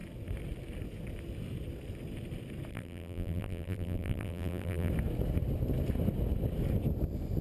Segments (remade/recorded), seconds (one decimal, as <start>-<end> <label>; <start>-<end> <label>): 0.0-2.7 recorded; 2.7-4.9 remade; 4.9-7.4 recorded